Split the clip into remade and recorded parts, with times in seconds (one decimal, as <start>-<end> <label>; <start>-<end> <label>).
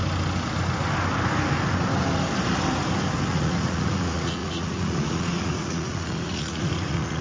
0.0-3.3 recorded; 3.3-7.2 remade